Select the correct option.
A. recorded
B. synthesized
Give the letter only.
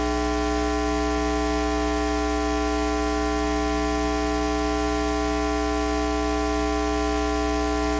A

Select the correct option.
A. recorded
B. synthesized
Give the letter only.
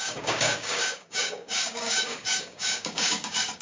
B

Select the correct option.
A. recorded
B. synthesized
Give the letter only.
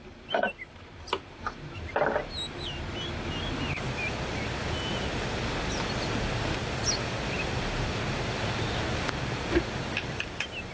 A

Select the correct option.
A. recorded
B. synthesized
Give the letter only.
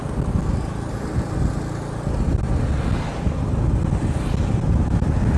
A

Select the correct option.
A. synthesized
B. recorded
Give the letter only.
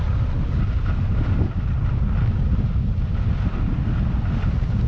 B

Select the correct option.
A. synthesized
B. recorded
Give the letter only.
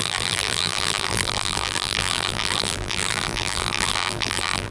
A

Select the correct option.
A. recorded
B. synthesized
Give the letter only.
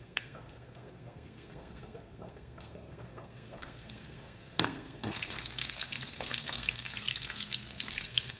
B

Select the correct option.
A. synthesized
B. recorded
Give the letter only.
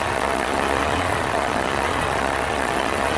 A